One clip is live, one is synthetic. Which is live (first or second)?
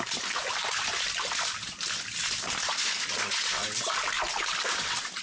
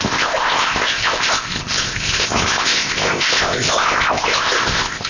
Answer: first